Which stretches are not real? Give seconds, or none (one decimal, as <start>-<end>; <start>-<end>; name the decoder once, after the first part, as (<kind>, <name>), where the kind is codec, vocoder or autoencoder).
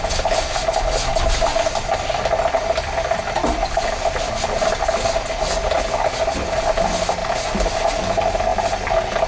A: 1.1-4.2 (vocoder, BigVGAN v2); 7.2-7.8